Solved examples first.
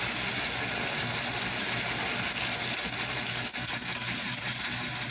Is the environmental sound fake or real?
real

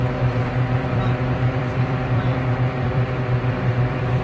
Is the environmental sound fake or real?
fake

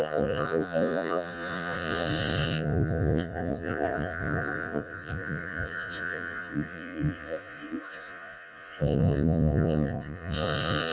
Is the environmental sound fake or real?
fake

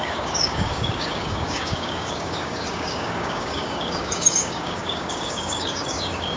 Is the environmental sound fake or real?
fake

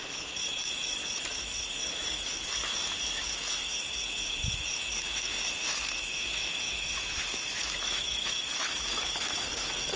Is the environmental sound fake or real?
fake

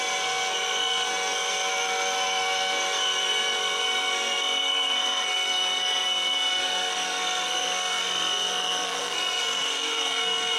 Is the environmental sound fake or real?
fake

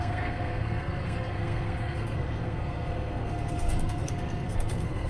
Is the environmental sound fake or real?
fake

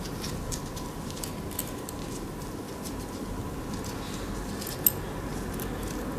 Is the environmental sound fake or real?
real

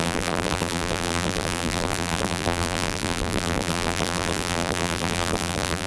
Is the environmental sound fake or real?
fake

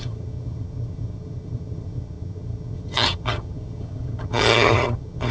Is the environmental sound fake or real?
fake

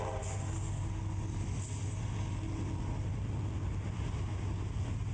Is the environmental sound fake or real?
real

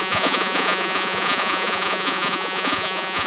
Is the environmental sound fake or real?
fake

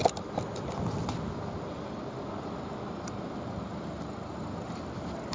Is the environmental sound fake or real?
real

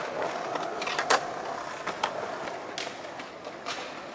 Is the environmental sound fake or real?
real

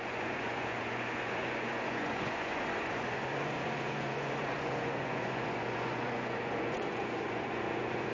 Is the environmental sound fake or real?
fake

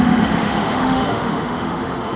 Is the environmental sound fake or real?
fake